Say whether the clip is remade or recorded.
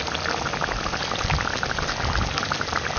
recorded